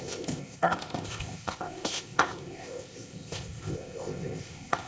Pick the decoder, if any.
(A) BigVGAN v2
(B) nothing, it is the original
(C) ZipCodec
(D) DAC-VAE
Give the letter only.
C